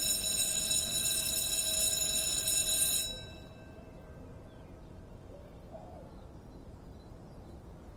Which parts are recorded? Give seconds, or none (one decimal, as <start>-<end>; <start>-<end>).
0.0-8.0